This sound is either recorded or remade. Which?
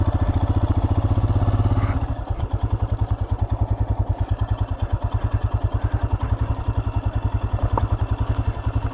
recorded